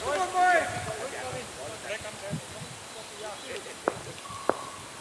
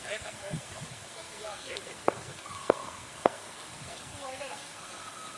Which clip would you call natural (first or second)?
first